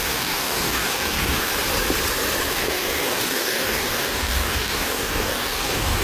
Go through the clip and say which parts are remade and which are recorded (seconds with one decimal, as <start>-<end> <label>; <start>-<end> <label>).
0.0-1.5 remade; 1.5-2.5 recorded; 2.5-6.0 remade